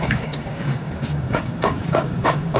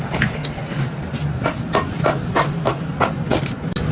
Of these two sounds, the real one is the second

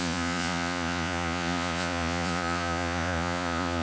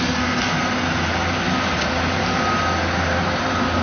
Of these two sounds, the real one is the second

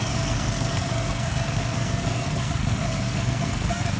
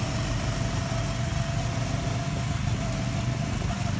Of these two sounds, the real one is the second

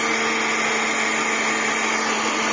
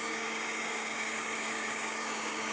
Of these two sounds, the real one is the first